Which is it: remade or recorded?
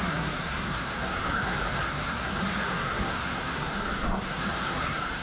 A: remade